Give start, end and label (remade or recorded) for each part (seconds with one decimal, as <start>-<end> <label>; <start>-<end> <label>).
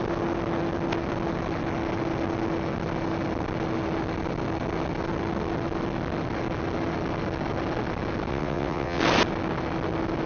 0.0-8.3 recorded; 8.3-9.0 remade; 9.0-10.3 recorded